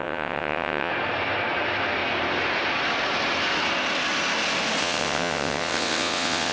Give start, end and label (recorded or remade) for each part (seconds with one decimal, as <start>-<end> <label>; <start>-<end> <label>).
0.0-0.9 remade; 0.9-4.8 recorded; 4.8-6.5 remade